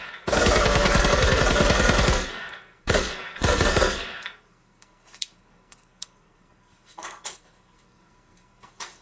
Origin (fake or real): fake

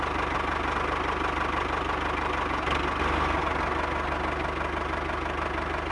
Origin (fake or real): real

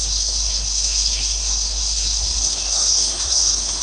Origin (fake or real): fake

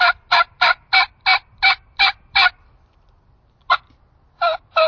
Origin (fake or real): real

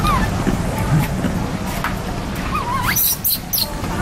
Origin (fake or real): real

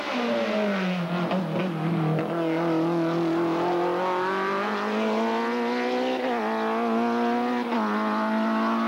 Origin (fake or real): real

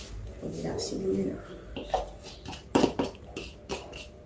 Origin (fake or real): real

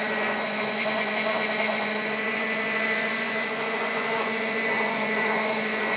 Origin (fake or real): fake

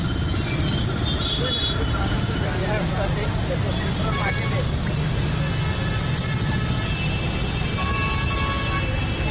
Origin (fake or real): real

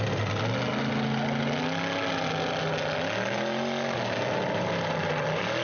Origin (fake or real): real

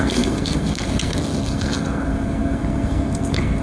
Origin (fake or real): fake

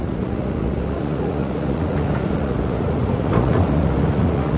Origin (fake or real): fake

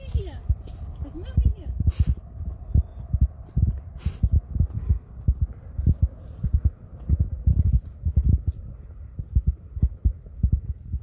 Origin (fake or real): real